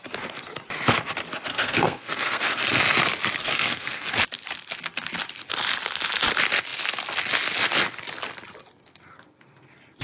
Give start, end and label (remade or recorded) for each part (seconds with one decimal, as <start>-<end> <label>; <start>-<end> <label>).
0.0-1.5 recorded; 1.5-2.8 remade; 2.8-3.4 recorded; 3.4-4.1 remade; 4.1-10.0 recorded